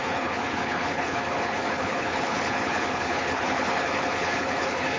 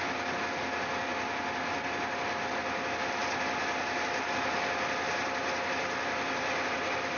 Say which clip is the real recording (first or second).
second